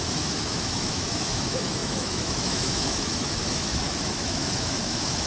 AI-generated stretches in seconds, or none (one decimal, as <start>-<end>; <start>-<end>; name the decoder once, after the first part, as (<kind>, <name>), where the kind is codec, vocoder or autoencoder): 0.0-5.3 (autoencoder, DAC-VAE)